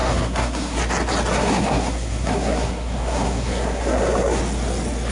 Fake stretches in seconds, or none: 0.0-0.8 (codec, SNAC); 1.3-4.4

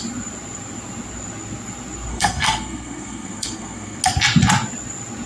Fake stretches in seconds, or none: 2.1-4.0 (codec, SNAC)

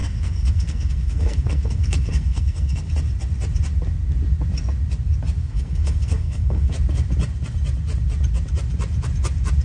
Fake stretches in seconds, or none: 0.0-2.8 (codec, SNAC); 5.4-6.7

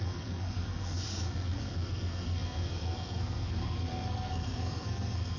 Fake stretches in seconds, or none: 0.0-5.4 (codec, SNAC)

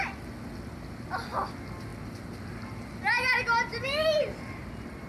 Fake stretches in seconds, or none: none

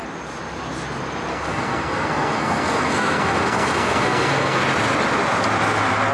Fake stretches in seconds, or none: 1.3-4.6 (codec, SNAC)